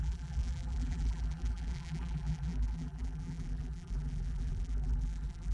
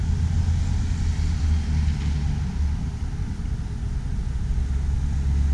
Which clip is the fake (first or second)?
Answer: first